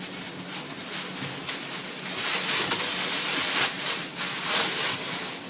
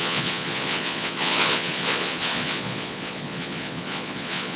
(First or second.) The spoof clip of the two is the second